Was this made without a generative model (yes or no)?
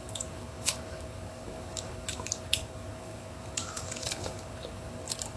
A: no